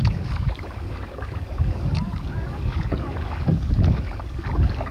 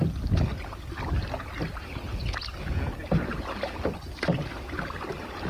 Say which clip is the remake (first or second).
first